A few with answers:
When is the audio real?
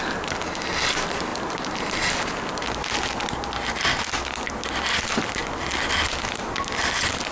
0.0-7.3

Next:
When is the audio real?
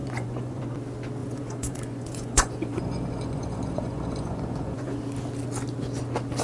0.6-1.2; 5.0-6.4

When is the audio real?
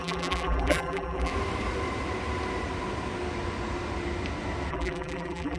1.3-4.7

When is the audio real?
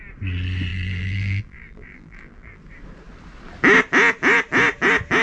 0.0-0.7; 2.6-5.2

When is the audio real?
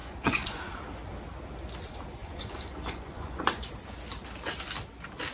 0.6-2.2; 3.7-5.3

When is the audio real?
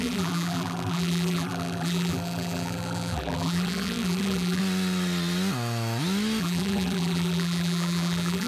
4.6-6.4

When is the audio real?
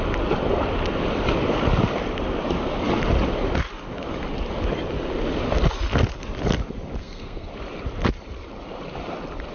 0.0-7.0; 7.5-9.5